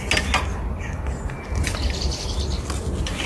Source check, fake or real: real